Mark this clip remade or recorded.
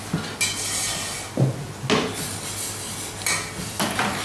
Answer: recorded